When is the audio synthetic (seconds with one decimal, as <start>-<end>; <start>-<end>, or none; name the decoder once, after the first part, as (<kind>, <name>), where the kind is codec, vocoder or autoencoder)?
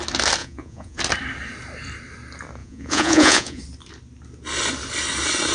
0.4-1.0 (vocoder, Vocos); 2.6-3.6